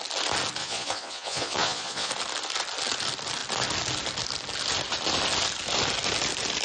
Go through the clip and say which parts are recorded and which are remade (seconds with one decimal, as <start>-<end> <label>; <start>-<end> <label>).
0.0-0.6 recorded; 0.6-2.1 remade; 2.1-6.6 recorded

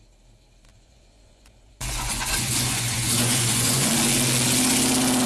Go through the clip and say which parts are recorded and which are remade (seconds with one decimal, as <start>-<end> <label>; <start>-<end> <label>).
0.0-0.7 recorded; 0.7-3.9 remade; 3.9-5.3 recorded

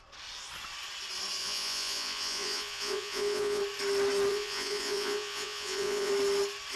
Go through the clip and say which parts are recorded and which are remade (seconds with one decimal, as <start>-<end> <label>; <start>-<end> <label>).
0.0-1.4 recorded; 1.4-3.6 remade; 3.6-4.3 recorded; 4.3-6.1 remade; 6.1-6.8 recorded

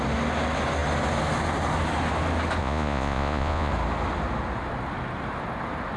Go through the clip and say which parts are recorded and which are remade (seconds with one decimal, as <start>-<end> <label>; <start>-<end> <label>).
0.0-2.6 recorded; 2.6-3.7 remade; 3.7-6.0 recorded